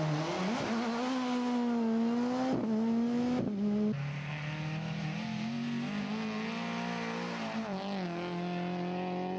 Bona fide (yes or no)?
yes